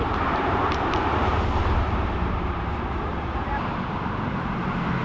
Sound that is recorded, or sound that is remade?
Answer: remade